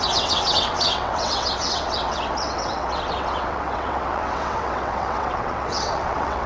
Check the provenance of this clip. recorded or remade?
remade